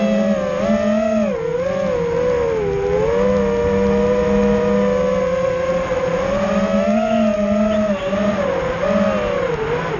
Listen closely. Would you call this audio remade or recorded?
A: recorded